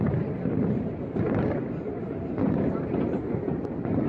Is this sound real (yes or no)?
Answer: yes